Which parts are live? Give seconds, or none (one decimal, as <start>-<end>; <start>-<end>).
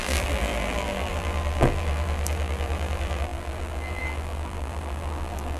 none